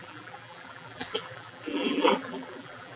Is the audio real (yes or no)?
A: no